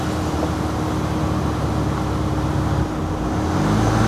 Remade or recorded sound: recorded